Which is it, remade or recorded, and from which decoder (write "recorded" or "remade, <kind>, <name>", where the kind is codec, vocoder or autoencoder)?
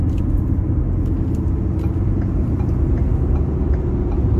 recorded